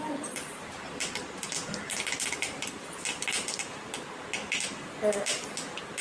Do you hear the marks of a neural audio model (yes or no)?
no